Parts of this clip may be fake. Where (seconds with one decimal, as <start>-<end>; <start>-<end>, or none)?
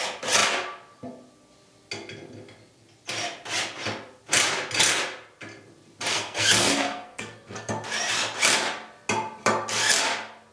6.1-7.7